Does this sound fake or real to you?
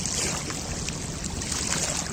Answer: real